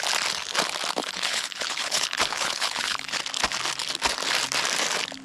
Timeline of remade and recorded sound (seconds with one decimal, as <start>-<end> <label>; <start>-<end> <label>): 0.0-1.0 recorded; 1.0-3.2 remade; 3.2-5.2 recorded